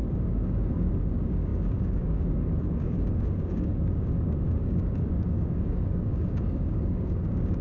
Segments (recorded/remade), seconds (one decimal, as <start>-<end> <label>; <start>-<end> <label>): 0.0-7.6 remade